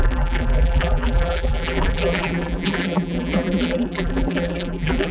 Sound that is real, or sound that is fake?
fake